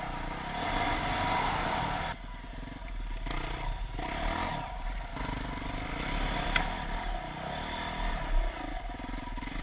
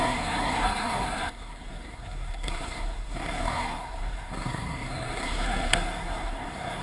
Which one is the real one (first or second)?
first